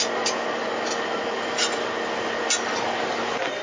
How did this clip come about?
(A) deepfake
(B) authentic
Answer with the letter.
B